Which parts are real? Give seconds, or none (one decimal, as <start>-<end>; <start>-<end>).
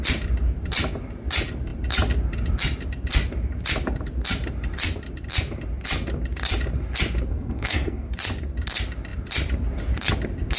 0.0-7.3; 8.1-10.6